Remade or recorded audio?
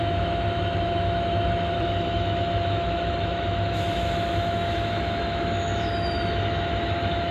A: remade